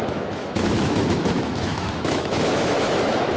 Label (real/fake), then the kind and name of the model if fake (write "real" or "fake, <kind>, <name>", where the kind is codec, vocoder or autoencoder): fake, autoencoder, DAC-VAE